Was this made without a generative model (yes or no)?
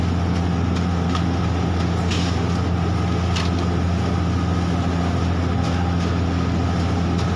yes